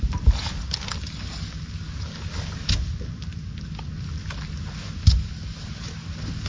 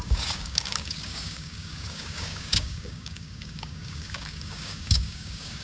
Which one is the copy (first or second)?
second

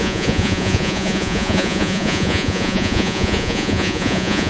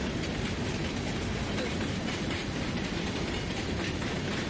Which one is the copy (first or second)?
first